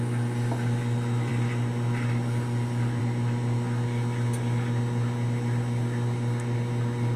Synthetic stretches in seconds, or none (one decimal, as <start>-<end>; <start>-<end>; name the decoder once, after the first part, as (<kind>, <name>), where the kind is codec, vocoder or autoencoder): none